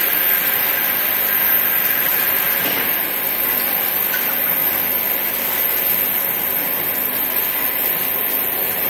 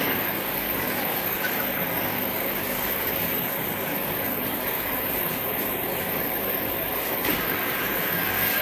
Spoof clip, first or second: second